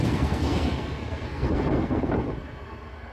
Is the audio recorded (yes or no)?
no